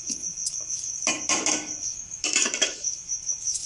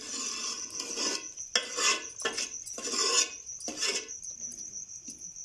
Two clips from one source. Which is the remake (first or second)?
first